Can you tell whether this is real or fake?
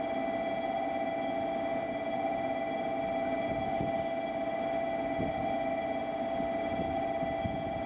real